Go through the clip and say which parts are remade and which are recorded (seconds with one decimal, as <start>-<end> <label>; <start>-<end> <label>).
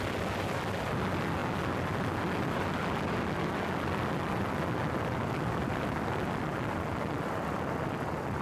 0.0-8.4 recorded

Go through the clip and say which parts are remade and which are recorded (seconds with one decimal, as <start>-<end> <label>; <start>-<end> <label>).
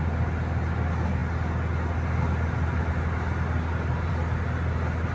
0.0-5.1 recorded